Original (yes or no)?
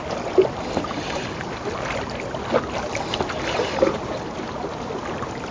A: yes